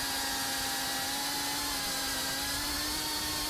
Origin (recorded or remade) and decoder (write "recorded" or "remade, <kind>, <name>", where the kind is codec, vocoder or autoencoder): recorded